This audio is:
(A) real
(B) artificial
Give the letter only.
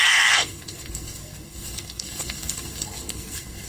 B